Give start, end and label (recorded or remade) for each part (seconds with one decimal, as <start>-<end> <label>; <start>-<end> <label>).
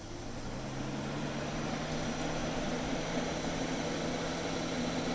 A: 0.0-1.2 recorded; 1.2-1.7 remade; 1.7-2.4 recorded; 2.4-4.0 remade; 4.0-5.1 recorded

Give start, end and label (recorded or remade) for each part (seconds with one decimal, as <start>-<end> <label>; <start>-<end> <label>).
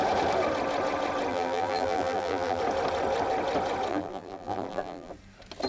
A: 0.0-1.3 recorded; 1.3-2.6 remade; 2.6-3.9 recorded; 3.9-5.1 remade; 5.1-5.7 recorded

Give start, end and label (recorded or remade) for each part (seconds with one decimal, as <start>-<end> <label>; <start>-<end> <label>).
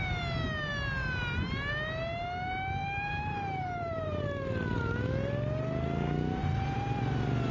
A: 0.0-2.8 recorded; 2.8-4.8 remade; 4.8-6.4 recorded; 6.4-7.0 remade; 7.0-7.5 recorded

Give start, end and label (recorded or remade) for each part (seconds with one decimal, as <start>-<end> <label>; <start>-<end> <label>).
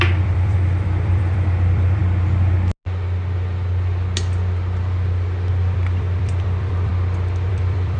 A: 0.0-2.0 remade; 2.0-5.5 recorded; 5.5-6.9 remade; 6.9-7.5 recorded; 7.5-8.0 remade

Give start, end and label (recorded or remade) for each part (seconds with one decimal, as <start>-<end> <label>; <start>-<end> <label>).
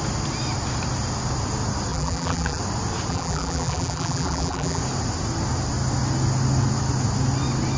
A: 0.0-1.9 recorded; 1.9-2.6 remade; 2.6-3.1 recorded; 3.1-4.8 remade; 4.8-7.8 recorded